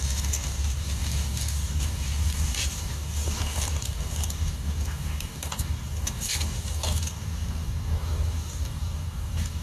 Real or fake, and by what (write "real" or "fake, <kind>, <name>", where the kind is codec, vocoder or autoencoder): fake, codec, DAC